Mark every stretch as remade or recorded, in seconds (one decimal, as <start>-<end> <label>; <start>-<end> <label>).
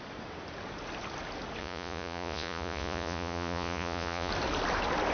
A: 0.0-1.6 recorded; 1.6-4.3 remade; 4.3-5.1 recorded